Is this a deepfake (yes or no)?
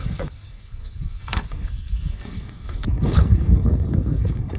yes